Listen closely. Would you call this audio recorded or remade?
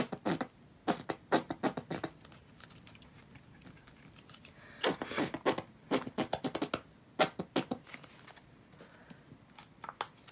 recorded